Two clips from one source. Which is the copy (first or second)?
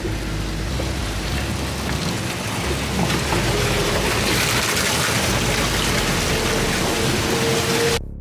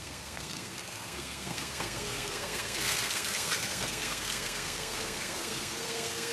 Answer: second